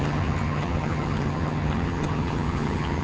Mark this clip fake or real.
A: fake